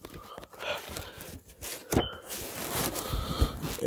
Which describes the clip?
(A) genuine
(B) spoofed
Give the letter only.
A